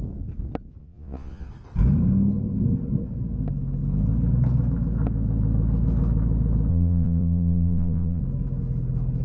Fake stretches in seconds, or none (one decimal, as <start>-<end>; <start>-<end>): 0.8-1.5; 6.7-8.2